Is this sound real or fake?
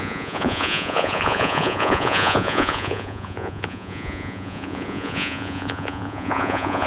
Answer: fake